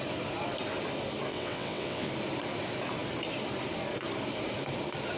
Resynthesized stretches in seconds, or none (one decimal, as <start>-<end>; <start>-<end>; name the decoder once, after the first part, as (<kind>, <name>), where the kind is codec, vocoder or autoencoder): 1.3-2.1 (vocoder, WaveNeXt)